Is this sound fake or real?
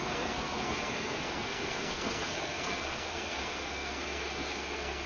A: fake